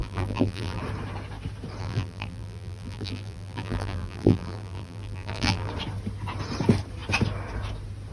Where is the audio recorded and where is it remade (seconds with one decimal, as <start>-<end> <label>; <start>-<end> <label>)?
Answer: 0.0-0.8 remade; 0.8-1.8 recorded; 1.8-5.7 remade; 5.7-8.1 recorded